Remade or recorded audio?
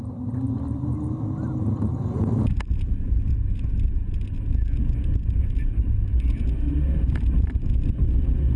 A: recorded